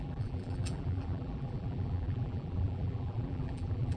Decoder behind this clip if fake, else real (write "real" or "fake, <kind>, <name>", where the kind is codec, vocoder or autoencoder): fake, vocoder, BigVGAN v2